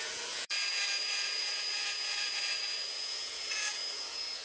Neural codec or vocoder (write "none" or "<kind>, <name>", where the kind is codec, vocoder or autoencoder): vocoder, Vocos